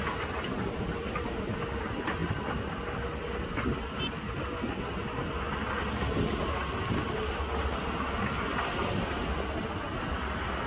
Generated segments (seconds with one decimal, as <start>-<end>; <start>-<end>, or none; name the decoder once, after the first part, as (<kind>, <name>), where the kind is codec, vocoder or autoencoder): none